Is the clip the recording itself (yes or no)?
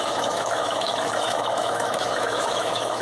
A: no